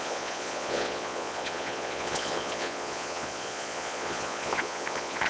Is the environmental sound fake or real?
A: fake